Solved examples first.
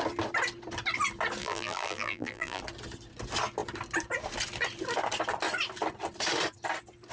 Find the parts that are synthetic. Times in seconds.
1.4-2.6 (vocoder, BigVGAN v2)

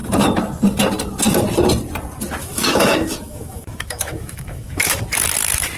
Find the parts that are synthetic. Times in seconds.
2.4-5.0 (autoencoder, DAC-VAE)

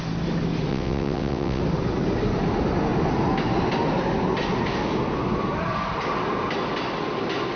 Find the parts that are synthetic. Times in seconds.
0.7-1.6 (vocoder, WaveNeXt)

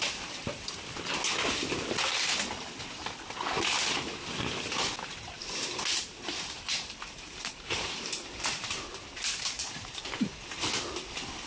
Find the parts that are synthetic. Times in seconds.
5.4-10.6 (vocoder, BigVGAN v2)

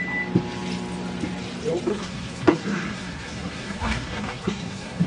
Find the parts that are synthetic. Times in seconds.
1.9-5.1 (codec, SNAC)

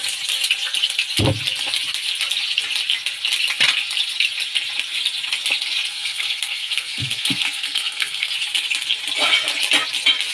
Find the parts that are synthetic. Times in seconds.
5.9-8.3 (codec, SNAC)